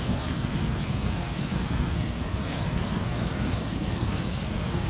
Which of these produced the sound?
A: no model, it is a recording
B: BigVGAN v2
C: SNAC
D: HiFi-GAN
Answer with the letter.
C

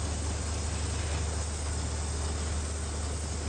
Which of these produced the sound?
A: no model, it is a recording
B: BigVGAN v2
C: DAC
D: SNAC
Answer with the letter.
A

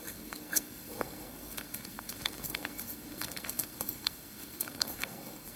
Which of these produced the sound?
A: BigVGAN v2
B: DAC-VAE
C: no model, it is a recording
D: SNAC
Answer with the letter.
D